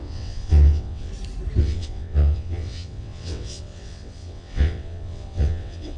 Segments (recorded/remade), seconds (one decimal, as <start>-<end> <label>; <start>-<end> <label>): 0.0-1.1 remade; 1.1-1.6 recorded; 1.6-6.0 remade